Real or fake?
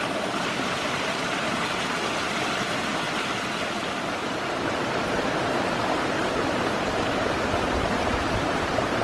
fake